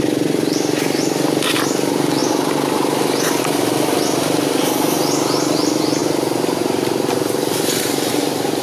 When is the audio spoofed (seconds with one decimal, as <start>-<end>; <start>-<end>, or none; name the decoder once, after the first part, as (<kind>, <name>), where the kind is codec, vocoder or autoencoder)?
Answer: none